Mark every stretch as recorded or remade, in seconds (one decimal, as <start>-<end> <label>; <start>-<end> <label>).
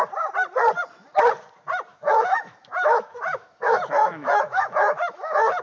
0.0-1.9 recorded; 1.9-5.6 remade